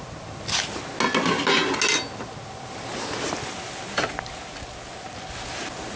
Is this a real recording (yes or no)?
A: yes